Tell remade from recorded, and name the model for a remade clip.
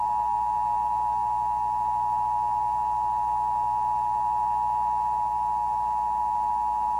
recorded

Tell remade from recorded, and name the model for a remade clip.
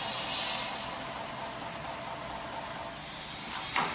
recorded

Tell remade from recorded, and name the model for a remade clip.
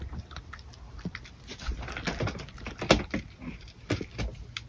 recorded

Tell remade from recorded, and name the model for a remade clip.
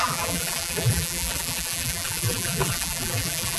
remade, vocoder, BigVGAN v2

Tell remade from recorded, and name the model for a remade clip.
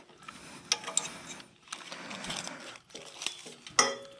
recorded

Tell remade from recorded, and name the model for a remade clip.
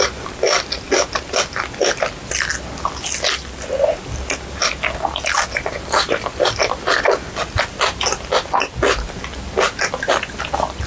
recorded